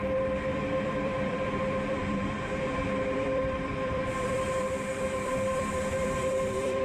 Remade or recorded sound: remade